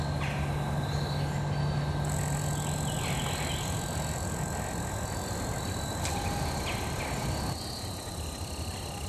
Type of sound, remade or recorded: recorded